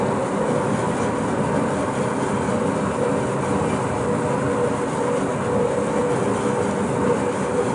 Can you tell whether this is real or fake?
real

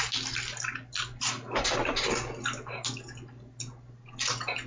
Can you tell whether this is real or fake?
real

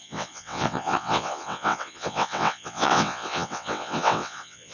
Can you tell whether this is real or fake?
fake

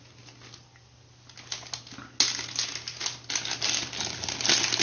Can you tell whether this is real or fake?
real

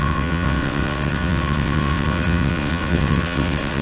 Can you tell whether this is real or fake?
fake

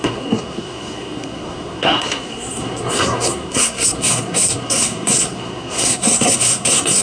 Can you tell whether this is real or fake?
fake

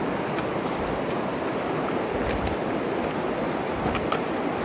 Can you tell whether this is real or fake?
real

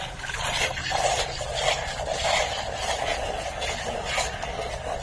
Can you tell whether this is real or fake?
real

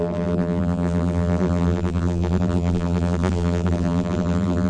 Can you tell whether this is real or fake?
fake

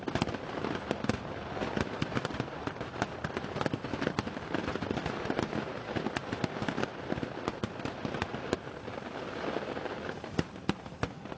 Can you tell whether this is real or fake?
fake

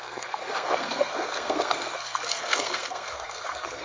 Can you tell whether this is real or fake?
fake